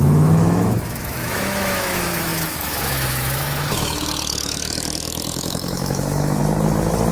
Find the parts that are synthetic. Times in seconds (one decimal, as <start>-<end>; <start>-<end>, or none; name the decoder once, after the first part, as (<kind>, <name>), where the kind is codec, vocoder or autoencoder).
0.0-6.4 (autoencoder, DAC-VAE)